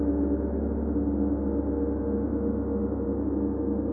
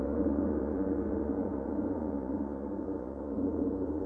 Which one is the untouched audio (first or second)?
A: first